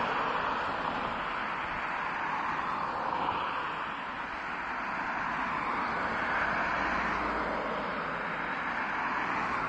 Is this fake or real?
real